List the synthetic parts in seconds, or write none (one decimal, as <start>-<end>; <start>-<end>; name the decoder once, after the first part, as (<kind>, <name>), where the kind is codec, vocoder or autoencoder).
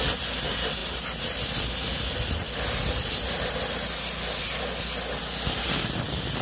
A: none